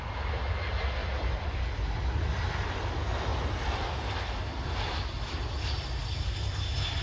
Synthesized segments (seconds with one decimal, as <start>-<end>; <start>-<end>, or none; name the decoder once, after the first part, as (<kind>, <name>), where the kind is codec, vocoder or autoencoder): 1.0-1.6 (vocoder, BigVGAN v2)